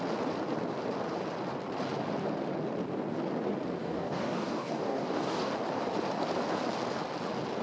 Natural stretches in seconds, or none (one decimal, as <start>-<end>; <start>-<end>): 0.0-3.8; 5.5-7.6